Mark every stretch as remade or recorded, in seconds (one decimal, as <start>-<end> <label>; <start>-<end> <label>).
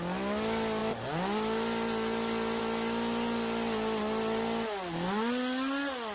0.0-6.1 recorded